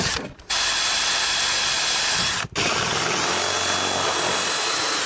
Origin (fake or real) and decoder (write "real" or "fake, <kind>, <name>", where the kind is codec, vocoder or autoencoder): real